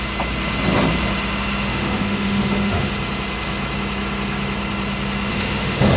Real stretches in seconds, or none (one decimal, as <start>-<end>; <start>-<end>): 0.0-1.7; 2.9-5.3